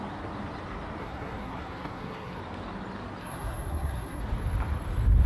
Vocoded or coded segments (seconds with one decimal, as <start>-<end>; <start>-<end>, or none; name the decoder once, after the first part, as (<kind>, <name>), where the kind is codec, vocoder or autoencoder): 1.0-2.4 (codec, SNAC); 3.2-4.2